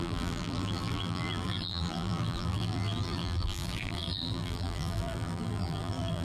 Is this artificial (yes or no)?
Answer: yes